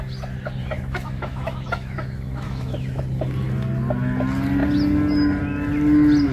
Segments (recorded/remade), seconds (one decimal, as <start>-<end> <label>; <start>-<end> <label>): 0.0-0.6 recorded; 0.6-3.0 remade; 3.0-6.3 recorded